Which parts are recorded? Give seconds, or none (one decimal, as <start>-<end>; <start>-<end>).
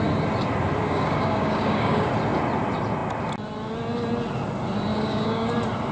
0.0-0.8; 2.1-4.9; 5.5-5.9